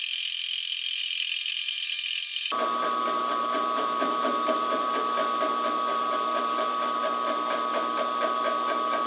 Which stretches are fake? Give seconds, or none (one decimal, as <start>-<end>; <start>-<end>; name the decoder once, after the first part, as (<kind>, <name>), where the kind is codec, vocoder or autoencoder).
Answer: 1.0-1.5 (vocoder, BigVGAN v2); 2.3-7.0